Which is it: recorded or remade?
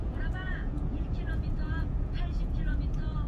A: remade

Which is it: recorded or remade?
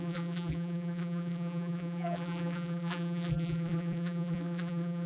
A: remade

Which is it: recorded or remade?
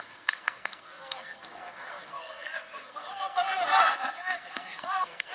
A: remade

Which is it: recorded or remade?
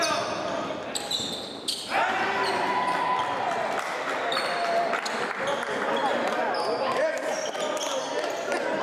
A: recorded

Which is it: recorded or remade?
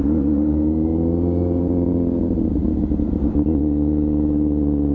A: recorded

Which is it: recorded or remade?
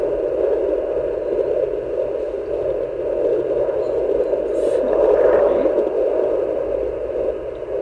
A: recorded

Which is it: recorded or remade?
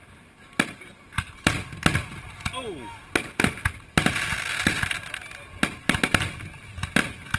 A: recorded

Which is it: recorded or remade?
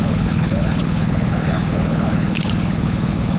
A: remade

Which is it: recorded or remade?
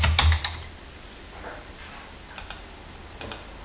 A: recorded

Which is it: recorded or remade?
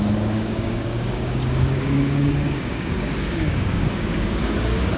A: remade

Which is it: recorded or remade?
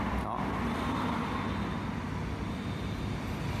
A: recorded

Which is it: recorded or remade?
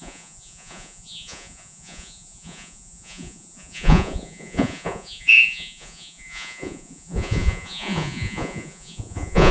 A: remade